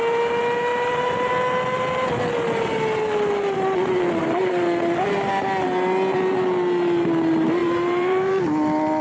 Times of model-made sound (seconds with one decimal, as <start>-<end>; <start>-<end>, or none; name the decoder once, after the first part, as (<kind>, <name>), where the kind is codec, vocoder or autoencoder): 0.7-1.3 (vocoder, BigVGAN v2); 7.6-8.3